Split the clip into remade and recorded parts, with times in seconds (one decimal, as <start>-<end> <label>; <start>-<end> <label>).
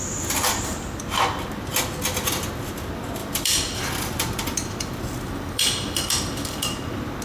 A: 0.0-1.0 remade; 1.0-3.2 recorded; 3.2-6.6 remade; 6.6-7.2 recorded